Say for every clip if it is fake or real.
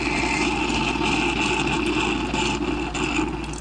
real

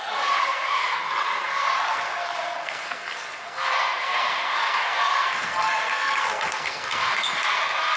fake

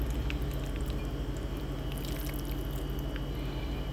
real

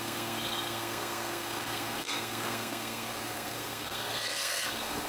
fake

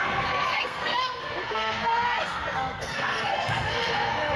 fake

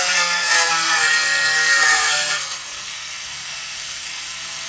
fake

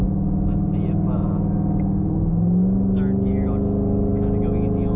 real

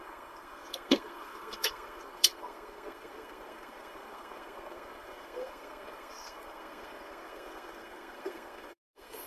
fake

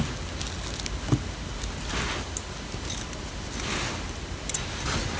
real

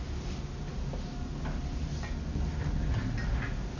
real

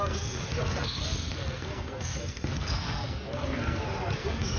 fake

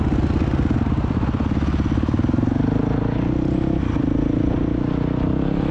real